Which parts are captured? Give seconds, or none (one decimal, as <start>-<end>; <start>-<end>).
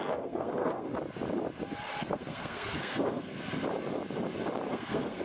0.9-1.9; 3.3-4.7